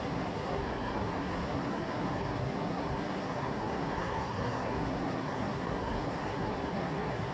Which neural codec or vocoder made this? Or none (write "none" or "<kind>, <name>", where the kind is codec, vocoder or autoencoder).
codec, SNAC